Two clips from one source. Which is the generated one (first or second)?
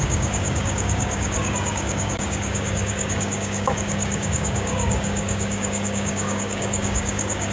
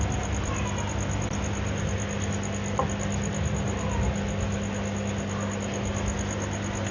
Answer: first